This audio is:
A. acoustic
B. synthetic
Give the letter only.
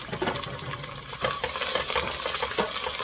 A